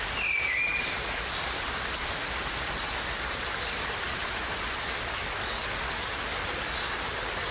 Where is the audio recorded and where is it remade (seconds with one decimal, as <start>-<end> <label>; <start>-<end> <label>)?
0.0-7.5 recorded